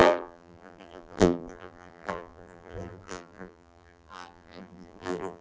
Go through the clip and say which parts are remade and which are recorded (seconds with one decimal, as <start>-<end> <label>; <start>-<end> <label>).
0.0-5.4 remade